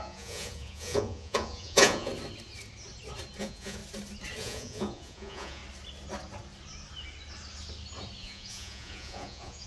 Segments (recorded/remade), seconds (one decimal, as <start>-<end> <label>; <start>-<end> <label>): 0.0-2.1 remade; 2.1-3.4 recorded; 3.4-3.8 remade; 3.8-4.4 recorded; 4.4-5.6 remade; 5.6-8.2 recorded; 8.2-9.7 remade